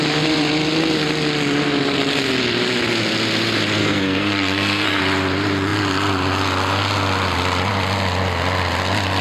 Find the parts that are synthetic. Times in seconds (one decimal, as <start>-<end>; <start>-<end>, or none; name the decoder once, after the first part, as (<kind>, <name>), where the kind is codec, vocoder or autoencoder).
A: 3.8-5.0 (codec, SNAC)